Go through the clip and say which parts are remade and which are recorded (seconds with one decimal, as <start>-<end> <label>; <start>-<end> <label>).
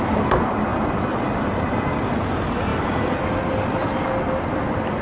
0.0-5.0 recorded